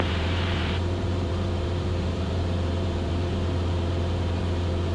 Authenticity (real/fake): fake